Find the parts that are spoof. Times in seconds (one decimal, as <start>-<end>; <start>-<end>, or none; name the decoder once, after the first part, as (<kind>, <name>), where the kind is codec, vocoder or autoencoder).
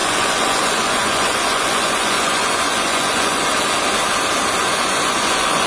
0.0-3.5 (vocoder, Vocos); 4.6-5.7